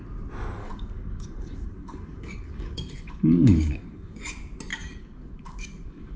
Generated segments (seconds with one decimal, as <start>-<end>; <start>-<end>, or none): 0.6-4.2; 4.7-6.2